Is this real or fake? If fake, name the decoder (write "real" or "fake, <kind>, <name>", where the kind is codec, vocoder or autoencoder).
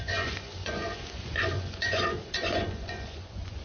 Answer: fake, vocoder, Vocos